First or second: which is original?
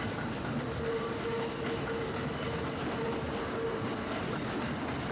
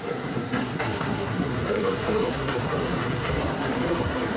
first